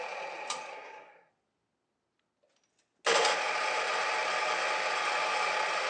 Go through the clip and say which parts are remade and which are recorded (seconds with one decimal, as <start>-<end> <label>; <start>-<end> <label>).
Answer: 0.0-0.7 recorded; 0.7-1.3 remade; 1.3-5.9 recorded